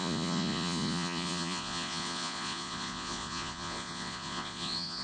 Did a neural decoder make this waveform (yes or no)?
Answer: yes